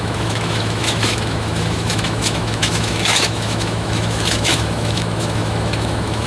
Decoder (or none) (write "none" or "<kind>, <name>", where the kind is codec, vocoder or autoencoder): autoencoder, DAC-VAE